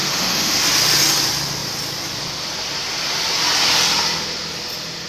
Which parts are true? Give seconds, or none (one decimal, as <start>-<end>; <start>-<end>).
0.6-5.1